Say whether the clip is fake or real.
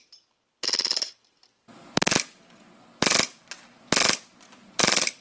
real